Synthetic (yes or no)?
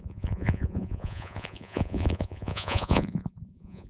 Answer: yes